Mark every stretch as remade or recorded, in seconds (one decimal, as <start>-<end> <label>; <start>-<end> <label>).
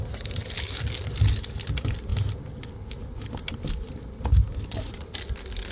0.0-5.7 recorded